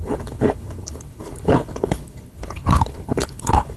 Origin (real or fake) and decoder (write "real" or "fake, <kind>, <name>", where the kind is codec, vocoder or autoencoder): fake, codec, HILCodec